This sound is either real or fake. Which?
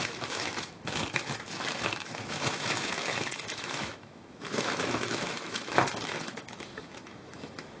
fake